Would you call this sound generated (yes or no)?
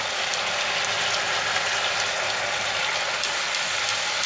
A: no